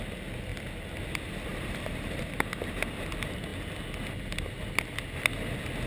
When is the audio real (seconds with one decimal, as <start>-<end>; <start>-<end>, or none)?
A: 0.0-1.5; 2.2-5.9